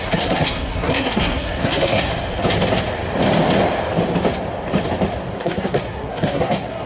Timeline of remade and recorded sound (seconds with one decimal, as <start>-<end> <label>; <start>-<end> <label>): 0.0-2.1 remade; 2.1-5.3 recorded; 5.3-6.9 remade

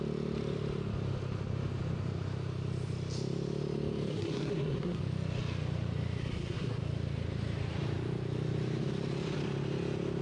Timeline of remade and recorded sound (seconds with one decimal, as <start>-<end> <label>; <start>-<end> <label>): 0.0-4.1 recorded; 4.1-5.0 remade; 5.0-6.2 recorded; 6.2-6.8 remade; 6.8-10.2 recorded

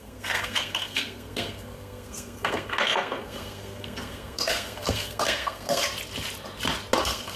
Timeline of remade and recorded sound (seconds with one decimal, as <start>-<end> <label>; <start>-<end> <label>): 0.0-5.8 remade; 5.8-7.0 recorded; 7.0-7.4 remade

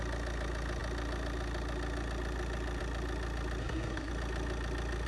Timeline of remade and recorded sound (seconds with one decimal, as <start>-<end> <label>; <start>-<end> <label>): 0.0-3.6 recorded; 3.6-4.1 remade; 4.1-5.1 recorded